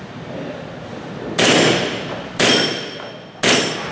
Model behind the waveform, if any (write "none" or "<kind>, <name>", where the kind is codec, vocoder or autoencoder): none